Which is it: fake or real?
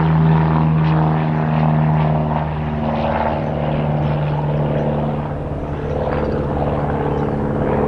real